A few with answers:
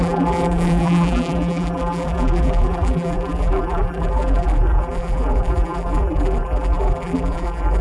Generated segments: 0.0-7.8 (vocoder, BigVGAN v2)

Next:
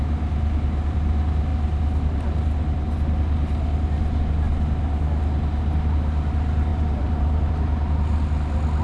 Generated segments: 6.7-7.5 (vocoder, BigVGAN v2)

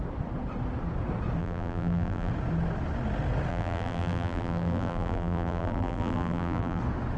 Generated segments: 1.4-2.3 (vocoder, BigVGAN v2); 3.5-6.8

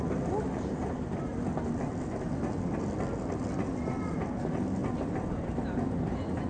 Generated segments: none

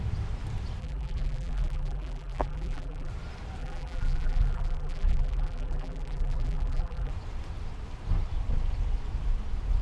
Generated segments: 0.8-3.1 (vocoder, BigVGAN v2); 3.6-7.1

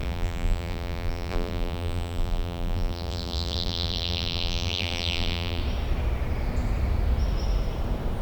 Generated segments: 0.0-5.6 (vocoder, BigVGAN v2)

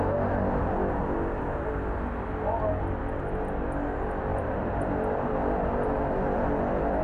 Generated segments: 4.3-4.9 (vocoder, BigVGAN v2)